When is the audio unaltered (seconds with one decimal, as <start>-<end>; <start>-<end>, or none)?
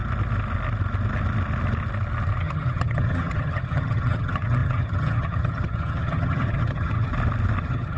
0.0-2.4; 7.1-7.6